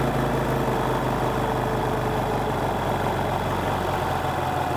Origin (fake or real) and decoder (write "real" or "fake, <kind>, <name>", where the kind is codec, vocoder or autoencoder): real